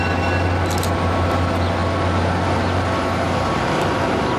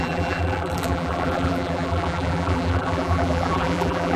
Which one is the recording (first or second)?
first